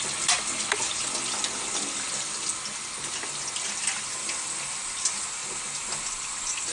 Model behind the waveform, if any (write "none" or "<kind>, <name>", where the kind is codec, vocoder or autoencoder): none